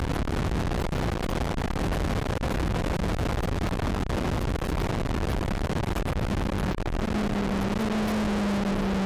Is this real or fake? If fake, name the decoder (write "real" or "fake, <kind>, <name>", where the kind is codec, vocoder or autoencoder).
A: real